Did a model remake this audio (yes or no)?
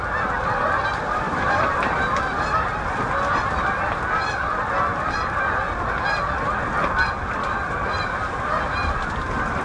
no